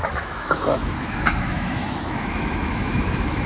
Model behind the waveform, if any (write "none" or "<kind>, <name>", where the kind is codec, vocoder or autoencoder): autoencoder, DAC-VAE